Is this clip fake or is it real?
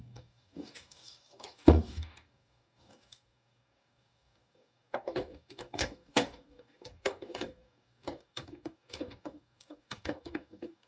fake